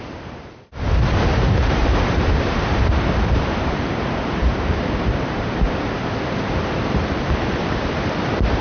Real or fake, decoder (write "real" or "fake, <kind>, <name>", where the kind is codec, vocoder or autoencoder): fake, vocoder, BigVGAN v2